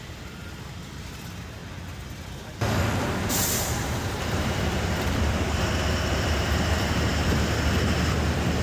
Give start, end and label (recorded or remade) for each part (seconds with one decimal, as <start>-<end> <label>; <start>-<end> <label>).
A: 0.0-1.6 remade; 1.6-6.2 recorded; 6.2-8.6 remade